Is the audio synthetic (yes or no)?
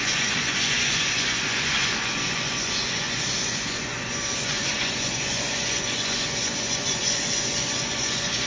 yes